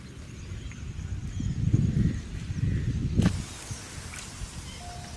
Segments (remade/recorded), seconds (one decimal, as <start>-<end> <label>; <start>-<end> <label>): 0.0-5.2 recorded